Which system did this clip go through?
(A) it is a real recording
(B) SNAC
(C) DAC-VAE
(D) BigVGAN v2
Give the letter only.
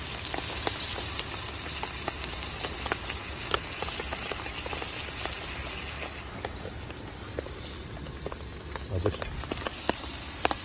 A